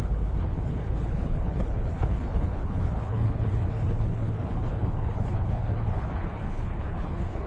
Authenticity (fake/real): fake